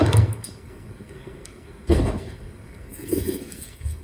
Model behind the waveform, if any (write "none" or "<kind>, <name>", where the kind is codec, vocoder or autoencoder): codec, SNAC